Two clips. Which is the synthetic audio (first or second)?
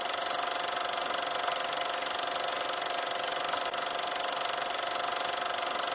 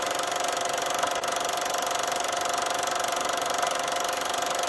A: second